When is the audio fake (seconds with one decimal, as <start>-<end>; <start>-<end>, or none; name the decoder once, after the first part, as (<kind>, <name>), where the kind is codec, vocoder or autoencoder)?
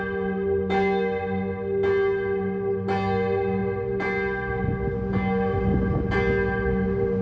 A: none